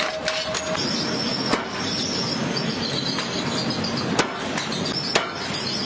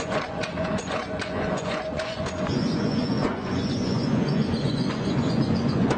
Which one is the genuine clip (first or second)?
first